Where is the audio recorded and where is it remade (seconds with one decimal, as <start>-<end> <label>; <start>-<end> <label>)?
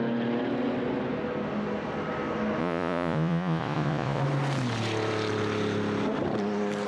0.0-2.6 recorded; 2.6-4.2 remade; 4.2-6.9 recorded